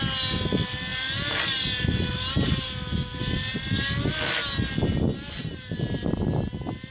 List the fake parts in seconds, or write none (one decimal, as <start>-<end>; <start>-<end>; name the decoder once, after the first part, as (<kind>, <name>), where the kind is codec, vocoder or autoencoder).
none